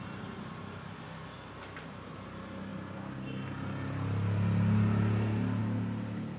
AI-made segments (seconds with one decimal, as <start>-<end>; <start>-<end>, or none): none